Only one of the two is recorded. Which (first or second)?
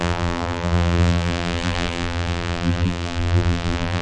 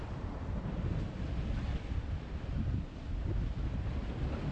second